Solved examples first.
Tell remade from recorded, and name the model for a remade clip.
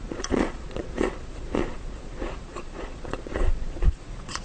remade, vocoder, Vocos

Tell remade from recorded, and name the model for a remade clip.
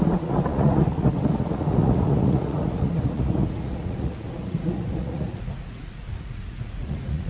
remade, vocoder, Vocos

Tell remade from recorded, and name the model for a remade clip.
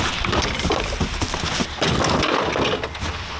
recorded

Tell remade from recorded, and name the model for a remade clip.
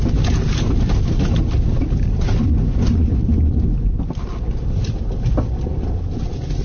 recorded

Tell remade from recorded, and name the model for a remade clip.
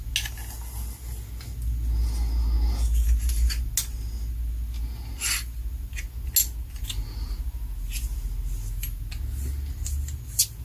recorded